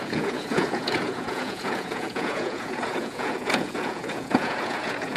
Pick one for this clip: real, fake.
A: fake